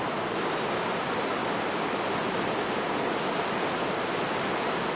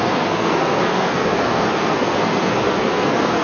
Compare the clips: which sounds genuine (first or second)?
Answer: first